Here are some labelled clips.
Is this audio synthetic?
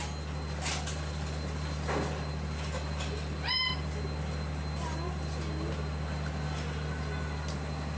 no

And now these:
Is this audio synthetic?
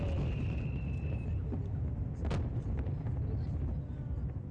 no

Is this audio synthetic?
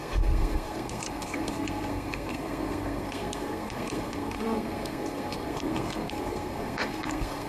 yes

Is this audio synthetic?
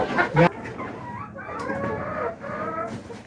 no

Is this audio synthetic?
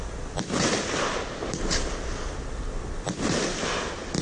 no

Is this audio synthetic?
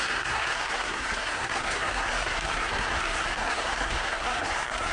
yes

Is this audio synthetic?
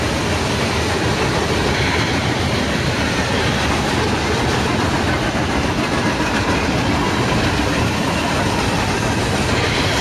no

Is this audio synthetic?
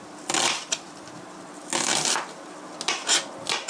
no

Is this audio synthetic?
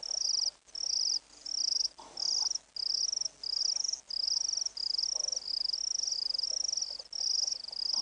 no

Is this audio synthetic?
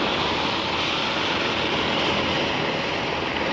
no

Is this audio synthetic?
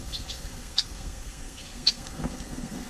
yes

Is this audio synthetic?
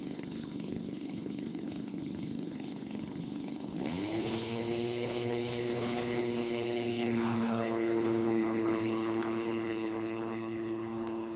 yes